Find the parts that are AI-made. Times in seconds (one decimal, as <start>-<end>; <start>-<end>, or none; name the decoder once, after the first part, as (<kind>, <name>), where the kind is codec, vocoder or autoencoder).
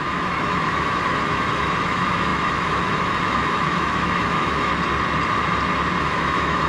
0.0-4.7 (autoencoder, DAC-VAE); 6.0-6.7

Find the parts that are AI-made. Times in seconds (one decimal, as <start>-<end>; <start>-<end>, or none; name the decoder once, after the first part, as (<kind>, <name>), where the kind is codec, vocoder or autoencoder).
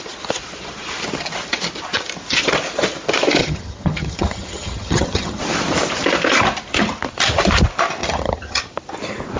3.4-5.4 (vocoder, HiFi-GAN); 8.0-8.6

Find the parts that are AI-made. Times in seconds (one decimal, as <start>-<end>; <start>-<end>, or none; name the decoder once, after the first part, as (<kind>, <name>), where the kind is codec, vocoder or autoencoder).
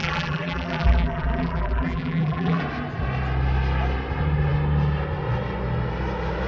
0.0-2.6 (vocoder, BigVGAN v2)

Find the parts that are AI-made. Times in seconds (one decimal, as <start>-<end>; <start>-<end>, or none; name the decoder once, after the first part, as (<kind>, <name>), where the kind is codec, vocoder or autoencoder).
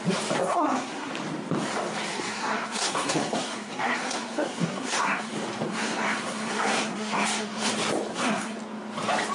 0.4-1.1 (codec, SNAC); 2.1-5.3; 5.7-7.7; 8.1-8.6